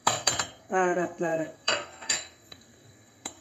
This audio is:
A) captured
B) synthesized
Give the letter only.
B